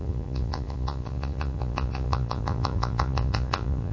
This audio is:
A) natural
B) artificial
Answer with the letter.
B